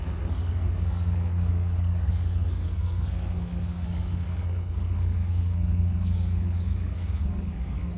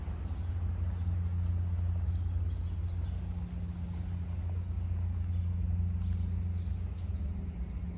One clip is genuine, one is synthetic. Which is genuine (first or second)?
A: second